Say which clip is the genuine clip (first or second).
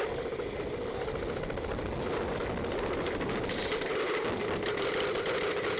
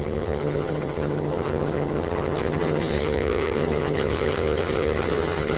first